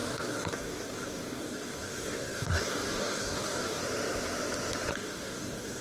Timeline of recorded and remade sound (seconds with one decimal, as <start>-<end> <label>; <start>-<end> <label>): 0.0-3.8 remade; 3.8-4.9 recorded; 4.9-5.8 remade